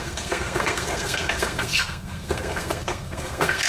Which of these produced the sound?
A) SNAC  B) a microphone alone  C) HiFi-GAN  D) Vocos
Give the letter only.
A